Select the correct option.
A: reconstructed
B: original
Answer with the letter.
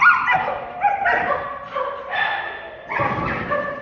B